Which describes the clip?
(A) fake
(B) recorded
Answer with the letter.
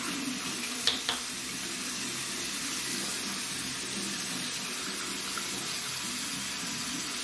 B